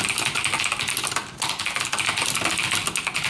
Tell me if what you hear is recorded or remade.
recorded